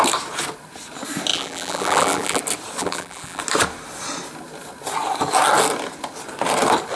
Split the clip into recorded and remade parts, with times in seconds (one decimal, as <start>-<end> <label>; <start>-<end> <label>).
0.0-1.3 recorded; 1.3-2.4 remade; 2.4-2.8 recorded; 2.8-3.4 remade; 3.4-7.0 recorded

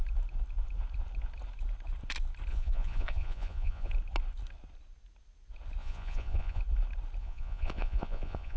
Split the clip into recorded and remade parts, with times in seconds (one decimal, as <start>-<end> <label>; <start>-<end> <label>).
0.0-2.5 recorded; 2.5-3.9 remade; 3.9-5.8 recorded; 5.8-6.6 remade; 6.6-7.2 recorded; 7.2-8.6 remade

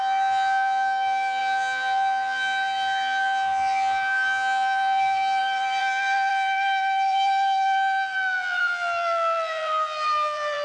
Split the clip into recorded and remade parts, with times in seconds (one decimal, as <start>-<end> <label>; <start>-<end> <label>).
0.0-10.6 remade

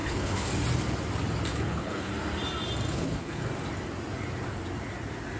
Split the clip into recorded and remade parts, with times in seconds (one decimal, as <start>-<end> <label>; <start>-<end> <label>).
0.0-0.5 remade; 0.5-1.5 recorded; 1.5-2.1 remade; 2.1-2.9 recorded; 2.9-3.4 remade; 3.4-5.4 recorded

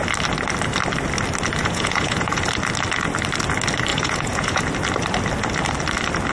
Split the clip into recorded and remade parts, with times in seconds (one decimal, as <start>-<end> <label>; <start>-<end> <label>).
0.0-1.6 recorded; 1.6-2.4 remade; 2.4-3.9 recorded; 3.9-4.6 remade; 4.6-6.3 recorded

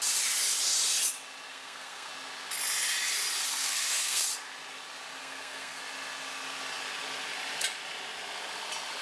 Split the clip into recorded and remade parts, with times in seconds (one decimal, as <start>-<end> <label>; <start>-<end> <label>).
0.0-1.5 recorded; 1.5-2.1 remade; 2.1-3.5 recorded; 3.5-4.3 remade; 4.3-5.2 recorded; 5.2-5.8 remade; 5.8-9.0 recorded

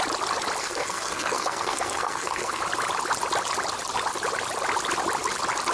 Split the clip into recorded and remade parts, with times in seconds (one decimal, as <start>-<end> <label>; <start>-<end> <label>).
0.0-0.6 recorded; 0.6-2.6 remade; 2.6-5.7 recorded

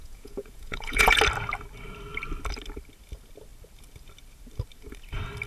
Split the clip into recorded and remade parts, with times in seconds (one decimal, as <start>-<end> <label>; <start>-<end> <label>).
0.0-1.2 remade; 1.2-5.5 recorded